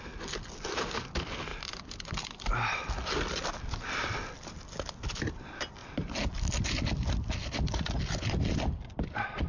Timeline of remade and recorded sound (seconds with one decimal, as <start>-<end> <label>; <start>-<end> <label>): 0.0-9.5 recorded